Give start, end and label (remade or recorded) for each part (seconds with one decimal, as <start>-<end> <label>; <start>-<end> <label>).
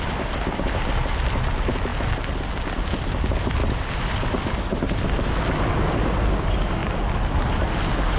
0.0-8.2 recorded